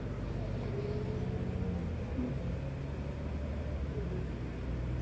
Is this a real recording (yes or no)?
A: yes